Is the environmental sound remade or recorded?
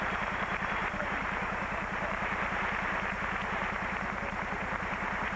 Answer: remade